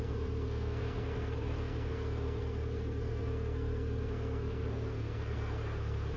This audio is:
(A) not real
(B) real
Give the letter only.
A